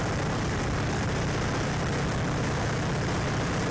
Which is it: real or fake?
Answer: real